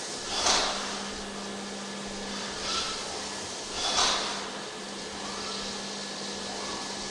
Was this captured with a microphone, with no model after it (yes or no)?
yes